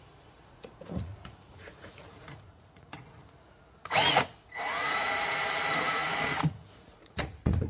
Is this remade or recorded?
remade